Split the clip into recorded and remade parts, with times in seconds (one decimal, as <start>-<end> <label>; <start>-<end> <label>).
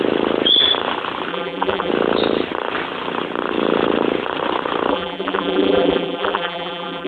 0.0-1.3 recorded; 1.3-1.9 remade; 1.9-4.9 recorded; 4.9-7.1 remade